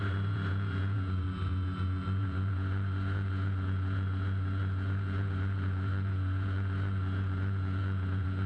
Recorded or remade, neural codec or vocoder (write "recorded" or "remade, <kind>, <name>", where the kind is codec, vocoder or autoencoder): remade, vocoder, Vocos